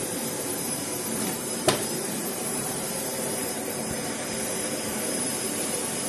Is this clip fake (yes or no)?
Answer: yes